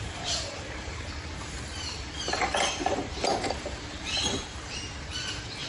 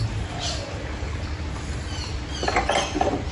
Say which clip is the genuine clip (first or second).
second